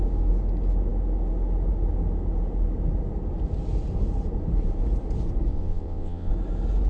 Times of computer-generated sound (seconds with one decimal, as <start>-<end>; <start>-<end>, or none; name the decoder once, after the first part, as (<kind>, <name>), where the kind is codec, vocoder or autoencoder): 5.5-6.3 (vocoder, WaveNeXt)